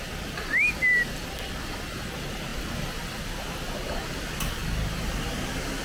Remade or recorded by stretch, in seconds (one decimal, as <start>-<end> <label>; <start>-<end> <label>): 0.0-5.8 recorded